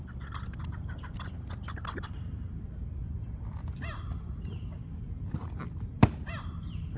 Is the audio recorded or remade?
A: remade